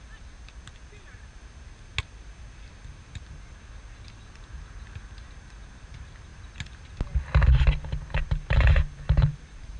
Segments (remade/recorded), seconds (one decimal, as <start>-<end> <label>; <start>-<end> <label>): 0.0-9.8 recorded